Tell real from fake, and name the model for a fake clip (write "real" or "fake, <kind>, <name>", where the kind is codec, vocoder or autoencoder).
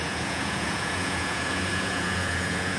fake, vocoder, Vocos